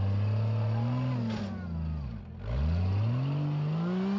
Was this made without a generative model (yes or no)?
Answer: yes